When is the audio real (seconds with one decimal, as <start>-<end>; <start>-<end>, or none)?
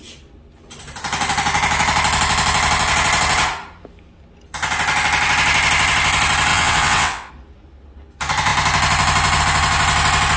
0.0-6.5; 7.3-10.4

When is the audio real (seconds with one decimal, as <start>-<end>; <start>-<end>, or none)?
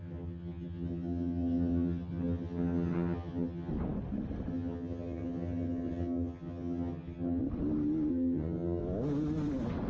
3.7-4.5; 7.4-8.1; 8.8-9.9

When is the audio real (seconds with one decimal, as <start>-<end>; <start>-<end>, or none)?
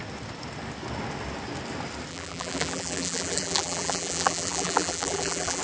0.0-2.1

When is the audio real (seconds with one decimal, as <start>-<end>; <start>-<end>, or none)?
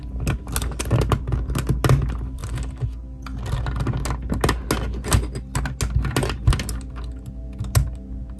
0.0-8.4